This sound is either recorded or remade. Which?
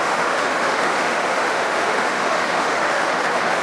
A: remade